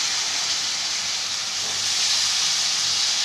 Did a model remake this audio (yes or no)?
no